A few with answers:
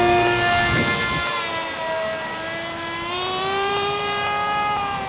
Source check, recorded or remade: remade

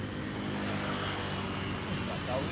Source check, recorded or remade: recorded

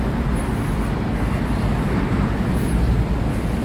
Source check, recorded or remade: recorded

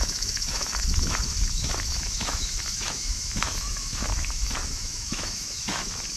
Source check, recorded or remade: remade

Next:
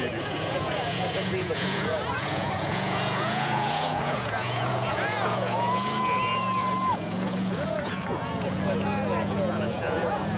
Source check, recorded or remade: remade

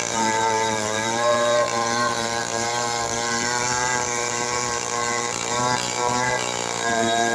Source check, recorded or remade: remade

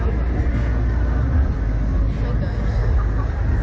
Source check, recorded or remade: recorded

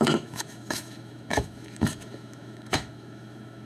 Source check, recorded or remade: remade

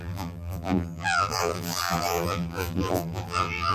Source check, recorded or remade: remade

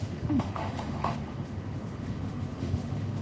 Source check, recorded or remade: remade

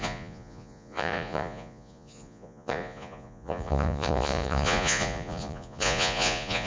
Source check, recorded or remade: remade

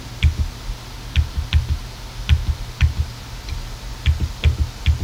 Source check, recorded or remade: recorded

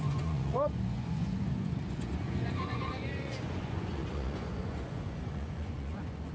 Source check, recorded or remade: remade